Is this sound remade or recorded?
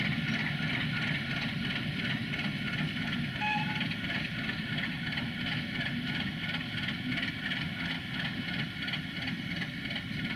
recorded